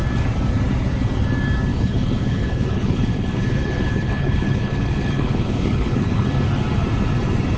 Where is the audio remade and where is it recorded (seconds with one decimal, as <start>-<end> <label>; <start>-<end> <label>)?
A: 0.0-1.7 recorded; 1.7-6.3 remade; 6.3-7.6 recorded